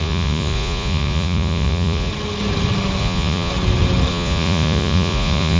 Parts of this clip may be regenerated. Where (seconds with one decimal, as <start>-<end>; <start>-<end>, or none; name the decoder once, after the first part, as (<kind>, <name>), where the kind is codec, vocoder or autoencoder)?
0.0-2.1 (vocoder, Vocos); 3.0-3.5; 4.1-5.6